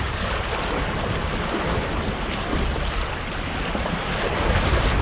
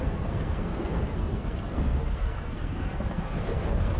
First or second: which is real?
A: first